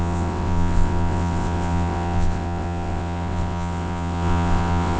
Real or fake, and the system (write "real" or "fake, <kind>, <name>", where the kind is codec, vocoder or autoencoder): fake, vocoder, WaveNeXt